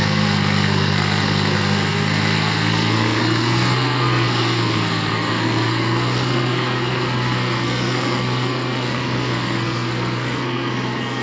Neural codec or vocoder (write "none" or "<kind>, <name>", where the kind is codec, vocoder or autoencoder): codec, SNAC